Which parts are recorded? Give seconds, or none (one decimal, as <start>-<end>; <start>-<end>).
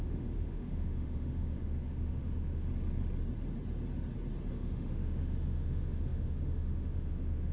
2.7-4.5